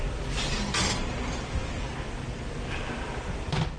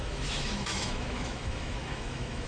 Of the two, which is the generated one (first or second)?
second